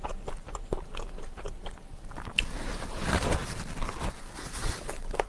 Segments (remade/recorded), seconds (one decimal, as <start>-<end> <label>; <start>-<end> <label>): 0.0-3.4 remade; 3.4-4.0 recorded; 4.0-5.3 remade